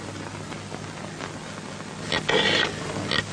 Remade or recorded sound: recorded